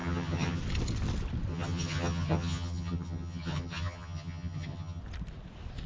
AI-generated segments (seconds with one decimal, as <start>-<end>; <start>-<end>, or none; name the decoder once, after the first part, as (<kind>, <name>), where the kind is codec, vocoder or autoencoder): 0.0-0.6 (vocoder, HiFi-GAN); 1.5-5.0